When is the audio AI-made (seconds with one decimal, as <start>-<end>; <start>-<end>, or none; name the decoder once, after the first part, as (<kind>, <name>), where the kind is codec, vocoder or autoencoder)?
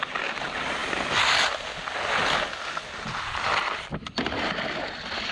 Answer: none